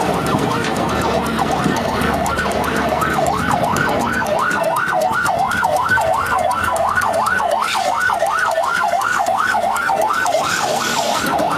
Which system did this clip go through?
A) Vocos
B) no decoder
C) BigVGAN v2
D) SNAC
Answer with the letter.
D